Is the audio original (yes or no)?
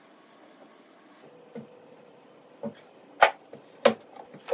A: yes